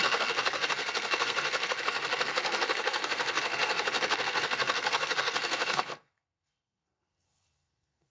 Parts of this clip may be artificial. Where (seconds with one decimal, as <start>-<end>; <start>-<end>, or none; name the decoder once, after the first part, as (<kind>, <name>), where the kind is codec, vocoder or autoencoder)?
0.0-8.1 (codec, SNAC)